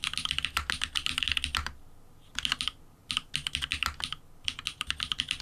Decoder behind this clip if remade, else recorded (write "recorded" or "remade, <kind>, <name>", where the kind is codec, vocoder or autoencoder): recorded